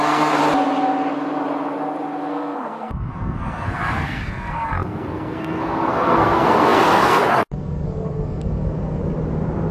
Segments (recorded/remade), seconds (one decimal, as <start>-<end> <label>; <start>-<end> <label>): 0.0-0.4 remade; 0.4-2.3 recorded; 2.3-9.0 remade; 9.0-9.7 recorded